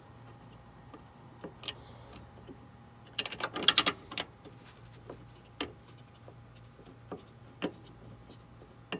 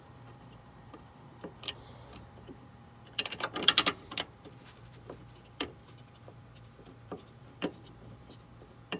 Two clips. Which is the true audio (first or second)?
first